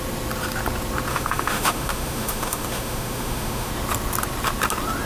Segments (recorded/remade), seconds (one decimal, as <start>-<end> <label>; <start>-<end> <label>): 0.0-1.1 recorded; 1.1-3.7 remade; 3.7-5.1 recorded